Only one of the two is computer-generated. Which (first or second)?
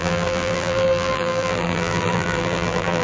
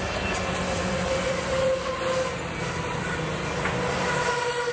first